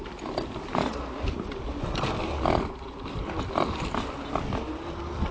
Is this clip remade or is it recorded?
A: recorded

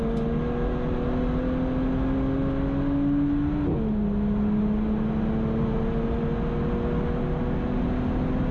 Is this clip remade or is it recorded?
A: recorded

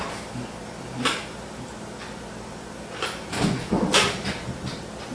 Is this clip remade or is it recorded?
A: recorded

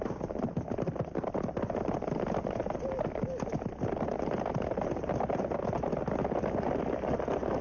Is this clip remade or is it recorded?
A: recorded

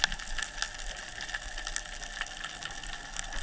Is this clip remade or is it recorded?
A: recorded